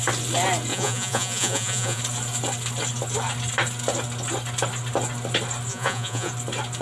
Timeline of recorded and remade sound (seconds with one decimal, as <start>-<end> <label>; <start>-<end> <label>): 0.0-0.7 recorded; 0.7-2.0 remade; 2.0-5.7 recorded; 5.7-6.3 remade; 6.3-6.8 recorded